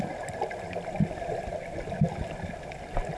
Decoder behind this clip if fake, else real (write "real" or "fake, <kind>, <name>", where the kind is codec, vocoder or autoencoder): real